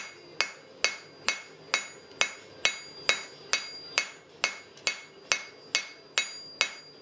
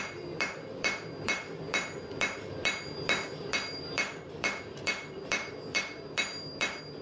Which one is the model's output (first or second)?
second